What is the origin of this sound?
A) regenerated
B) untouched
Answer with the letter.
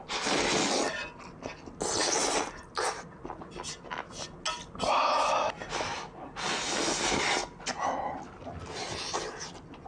B